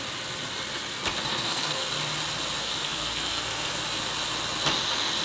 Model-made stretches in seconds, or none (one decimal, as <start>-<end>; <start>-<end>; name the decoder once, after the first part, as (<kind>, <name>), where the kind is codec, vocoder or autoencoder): 1.3-1.9 (codec, SNAC); 2.6-3.7